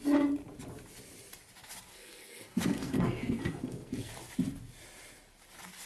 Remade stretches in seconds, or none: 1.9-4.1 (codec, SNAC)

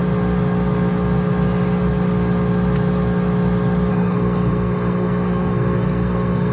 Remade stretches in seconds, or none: 3.9-6.5 (codec, SNAC)

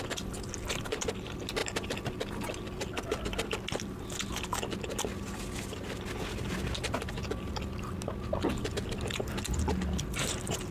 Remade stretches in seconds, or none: none

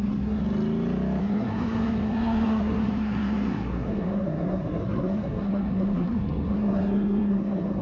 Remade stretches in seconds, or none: 0.0-0.4 (codec, SNAC); 1.2-7.8

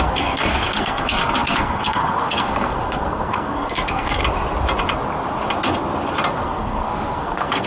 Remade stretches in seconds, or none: 0.0-4.2 (codec, SNAC); 6.4-7.7

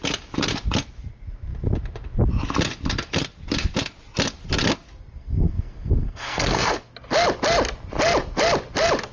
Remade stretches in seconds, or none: 5.2-6.9 (codec, SNAC)

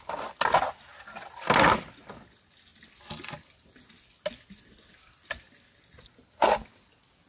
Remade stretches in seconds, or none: none

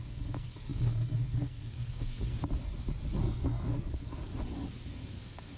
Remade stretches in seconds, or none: 0.0-2.4 (codec, SNAC); 3.2-4.3; 4.9-5.6